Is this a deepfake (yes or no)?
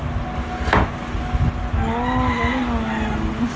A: no